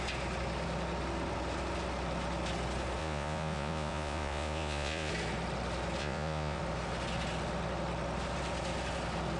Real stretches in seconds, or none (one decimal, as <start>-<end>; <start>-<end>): 0.0-3.0; 5.1-6.0; 6.6-9.4